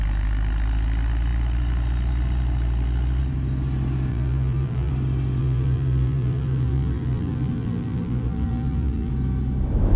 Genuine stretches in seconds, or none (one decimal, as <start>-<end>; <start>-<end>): 0.0-4.1; 4.9-5.4; 9.1-10.0